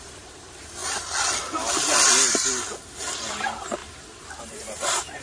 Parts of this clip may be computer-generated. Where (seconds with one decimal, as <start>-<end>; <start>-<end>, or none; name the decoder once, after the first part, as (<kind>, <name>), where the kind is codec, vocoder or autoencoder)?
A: 0.0-0.8 (vocoder, BigVGAN v2); 3.3-3.8; 4.4-5.2